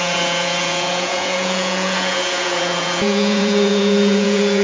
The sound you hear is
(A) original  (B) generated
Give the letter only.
B